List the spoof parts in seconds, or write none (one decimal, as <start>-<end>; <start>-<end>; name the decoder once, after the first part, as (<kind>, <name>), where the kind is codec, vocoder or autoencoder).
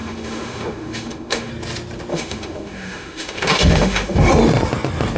0.0-1.5 (autoencoder, DAC-VAE); 2.1-4.3